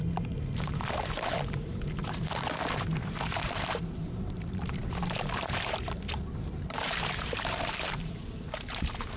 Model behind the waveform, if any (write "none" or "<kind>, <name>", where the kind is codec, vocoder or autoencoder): vocoder, BigVGAN v2